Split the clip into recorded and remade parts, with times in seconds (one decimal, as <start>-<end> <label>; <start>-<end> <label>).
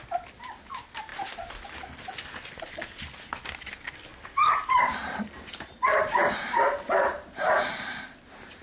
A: 0.0-4.1 recorded; 4.1-7.7 remade; 7.7-8.6 recorded